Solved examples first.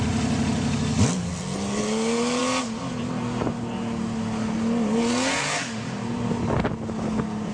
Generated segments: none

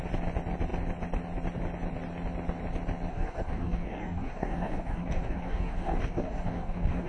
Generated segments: 3.1-7.1 (codec, DAC)

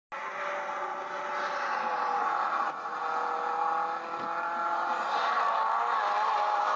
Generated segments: 2.2-3.0 (vocoder, Vocos)

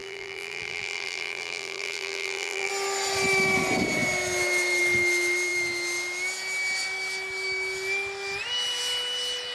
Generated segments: 0.0-2.7 (vocoder, BigVGAN v2)

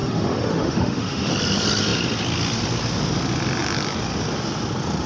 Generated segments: 0.0-1.3 (autoencoder, DAC-VAE)